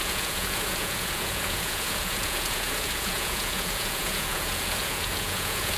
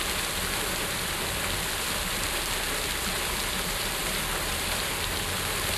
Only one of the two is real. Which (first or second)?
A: second